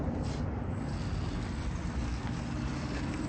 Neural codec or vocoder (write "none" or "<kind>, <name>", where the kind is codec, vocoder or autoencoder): none